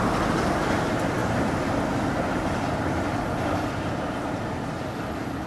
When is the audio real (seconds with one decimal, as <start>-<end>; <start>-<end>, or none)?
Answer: 0.0-5.5